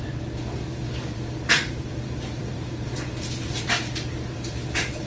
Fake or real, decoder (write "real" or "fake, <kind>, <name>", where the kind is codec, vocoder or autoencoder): fake, vocoder, BigVGAN v2